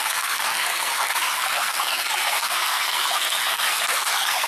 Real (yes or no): no